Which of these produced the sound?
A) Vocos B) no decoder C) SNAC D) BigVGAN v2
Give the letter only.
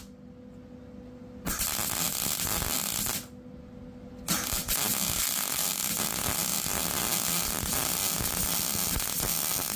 B